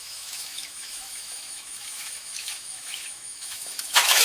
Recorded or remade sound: remade